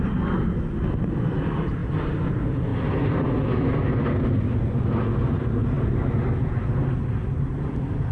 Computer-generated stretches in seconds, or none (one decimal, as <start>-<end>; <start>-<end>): none